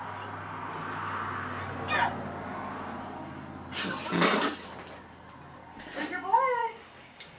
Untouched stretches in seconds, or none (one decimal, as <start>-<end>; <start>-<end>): 0.0-6.6